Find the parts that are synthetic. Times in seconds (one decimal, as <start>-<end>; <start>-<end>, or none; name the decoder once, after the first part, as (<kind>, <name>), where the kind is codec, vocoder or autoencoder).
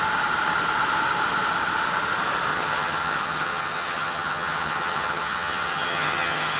2.5-6.6 (vocoder, HiFi-GAN)